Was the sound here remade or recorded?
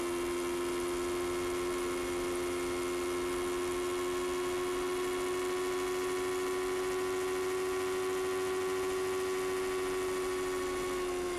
recorded